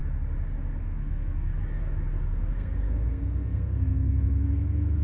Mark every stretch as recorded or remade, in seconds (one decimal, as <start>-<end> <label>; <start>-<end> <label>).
0.0-0.8 recorded; 0.8-1.5 remade; 1.5-2.5 recorded; 2.5-5.0 remade